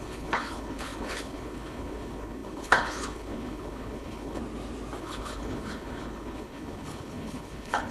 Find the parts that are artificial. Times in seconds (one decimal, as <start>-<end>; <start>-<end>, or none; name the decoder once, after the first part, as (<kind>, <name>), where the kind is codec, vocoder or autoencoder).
0.0-4.4 (codec, HILCodec); 5.0-7.9